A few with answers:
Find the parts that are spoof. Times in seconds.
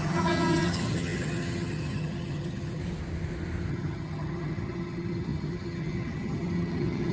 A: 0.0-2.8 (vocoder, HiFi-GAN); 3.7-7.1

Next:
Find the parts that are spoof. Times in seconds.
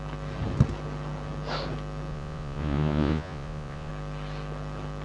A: 2.1-3.9 (vocoder, Vocos)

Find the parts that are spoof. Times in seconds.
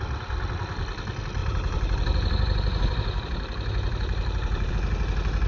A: 1.4-4.7 (vocoder, BigVGAN v2)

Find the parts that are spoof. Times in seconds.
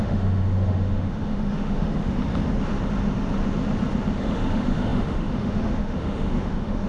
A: 0.0-2.2 (autoencoder, DAC-VAE); 4.2-6.9